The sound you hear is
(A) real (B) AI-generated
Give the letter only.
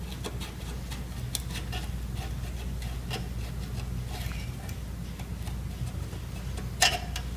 A